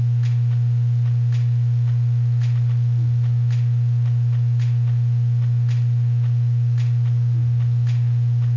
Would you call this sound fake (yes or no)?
no